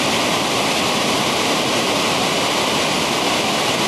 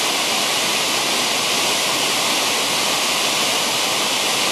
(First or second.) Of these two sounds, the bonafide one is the second